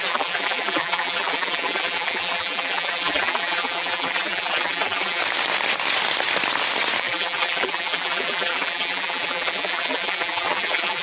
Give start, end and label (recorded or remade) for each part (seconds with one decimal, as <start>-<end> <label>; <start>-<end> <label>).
0.0-5.2 remade; 5.2-7.0 recorded; 7.0-11.0 remade